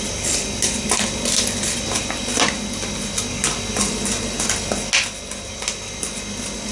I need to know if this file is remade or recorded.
recorded